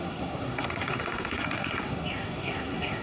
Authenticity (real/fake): fake